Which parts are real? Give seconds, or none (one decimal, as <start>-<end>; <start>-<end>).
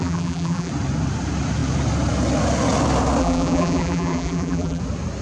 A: 0.7-3.2; 4.8-5.2